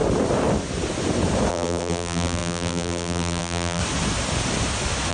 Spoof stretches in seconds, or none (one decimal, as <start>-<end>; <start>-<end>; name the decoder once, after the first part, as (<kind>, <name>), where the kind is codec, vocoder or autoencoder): 1.5-3.8 (vocoder, BigVGAN v2)